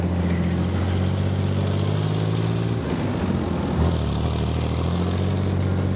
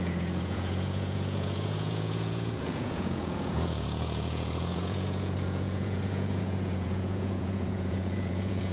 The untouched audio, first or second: first